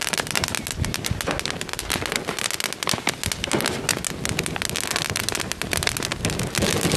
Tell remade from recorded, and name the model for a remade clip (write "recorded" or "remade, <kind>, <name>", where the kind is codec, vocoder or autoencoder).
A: recorded